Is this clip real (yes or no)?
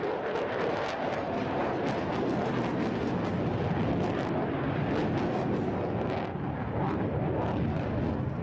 yes